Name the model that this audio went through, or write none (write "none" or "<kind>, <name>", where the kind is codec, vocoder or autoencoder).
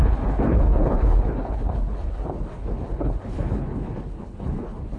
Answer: codec, HILCodec